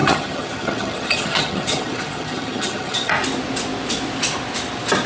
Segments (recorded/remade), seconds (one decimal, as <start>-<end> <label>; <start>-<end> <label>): 0.0-3.1 remade; 3.1-5.1 recorded

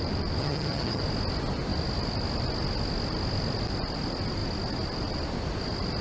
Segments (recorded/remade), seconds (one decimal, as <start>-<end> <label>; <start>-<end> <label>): 0.0-0.4 recorded; 0.4-1.0 remade; 1.0-6.0 recorded

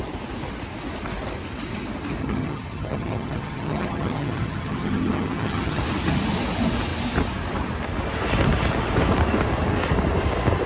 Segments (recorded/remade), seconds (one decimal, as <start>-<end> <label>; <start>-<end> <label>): 0.0-2.2 recorded; 2.2-5.8 remade; 5.8-10.7 recorded